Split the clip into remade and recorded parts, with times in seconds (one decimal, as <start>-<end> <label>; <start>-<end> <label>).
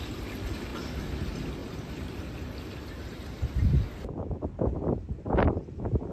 0.0-6.1 recorded